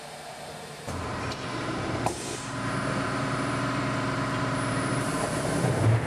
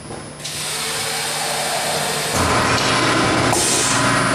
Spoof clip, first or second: first